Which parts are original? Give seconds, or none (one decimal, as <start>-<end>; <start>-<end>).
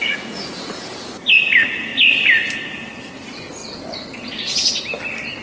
1.0-5.4